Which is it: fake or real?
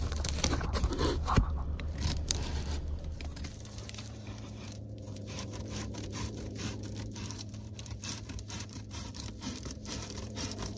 fake